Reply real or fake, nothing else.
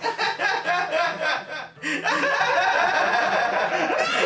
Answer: real